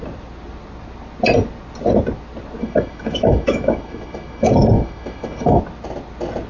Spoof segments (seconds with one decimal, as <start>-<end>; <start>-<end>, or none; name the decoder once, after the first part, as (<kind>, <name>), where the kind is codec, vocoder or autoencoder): 2.6-5.6 (autoencoder, DAC-VAE)